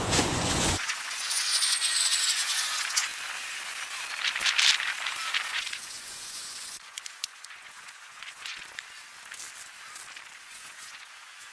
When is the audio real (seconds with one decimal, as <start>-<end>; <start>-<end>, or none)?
3.1-5.5; 8.6-10.4

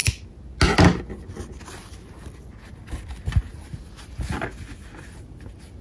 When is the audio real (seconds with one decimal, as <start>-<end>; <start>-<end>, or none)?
0.0-5.8

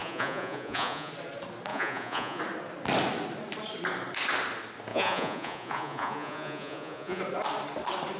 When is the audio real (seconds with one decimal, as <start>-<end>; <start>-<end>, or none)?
1.1-1.7; 2.4-4.9; 7.2-8.2

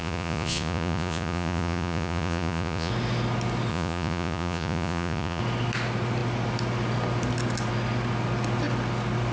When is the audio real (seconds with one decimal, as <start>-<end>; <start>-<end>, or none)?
2.9-3.7; 5.4-9.3

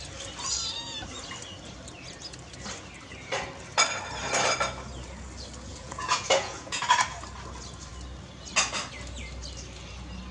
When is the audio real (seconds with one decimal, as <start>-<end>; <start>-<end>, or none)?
0.0-5.7; 6.8-10.3

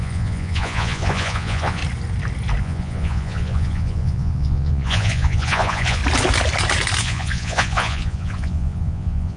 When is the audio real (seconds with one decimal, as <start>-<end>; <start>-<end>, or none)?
1.8-2.6; 6.0-7.0

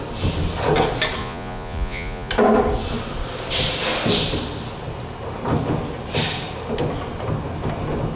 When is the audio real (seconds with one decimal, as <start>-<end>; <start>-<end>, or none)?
0.0-1.2; 2.3-8.2

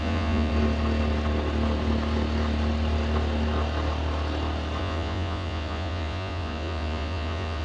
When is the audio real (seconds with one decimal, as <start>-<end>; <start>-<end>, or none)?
0.5-4.8